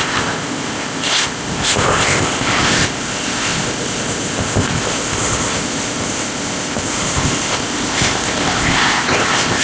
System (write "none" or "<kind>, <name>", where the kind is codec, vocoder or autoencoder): codec, ZipCodec